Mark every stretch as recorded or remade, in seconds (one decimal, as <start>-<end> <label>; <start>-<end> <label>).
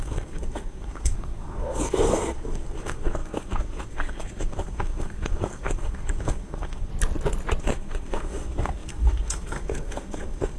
0.0-6.9 remade; 6.9-7.6 recorded; 7.6-10.6 remade